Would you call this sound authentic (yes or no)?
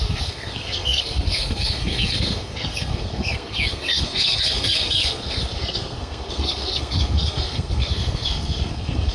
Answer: no